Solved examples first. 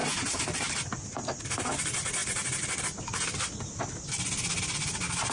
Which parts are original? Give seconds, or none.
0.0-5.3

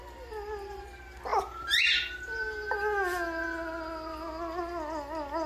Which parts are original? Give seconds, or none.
0.0-5.5

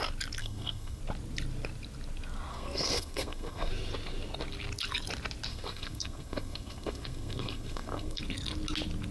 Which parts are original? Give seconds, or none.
0.0-0.4; 1.0-2.5; 3.7-5.5; 8.2-9.1

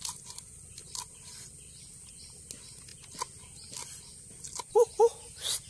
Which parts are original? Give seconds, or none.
0.0-5.7

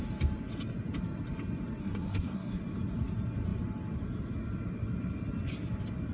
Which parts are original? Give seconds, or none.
0.0-1.8; 2.6-6.1

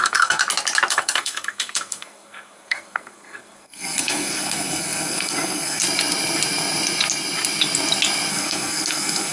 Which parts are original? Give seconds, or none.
0.4-0.9; 5.8-8.3